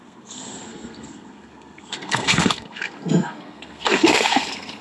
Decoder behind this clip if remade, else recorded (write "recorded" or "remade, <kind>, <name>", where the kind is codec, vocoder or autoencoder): remade, codec, SNAC